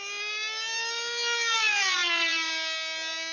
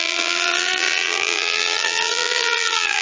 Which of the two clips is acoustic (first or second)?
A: first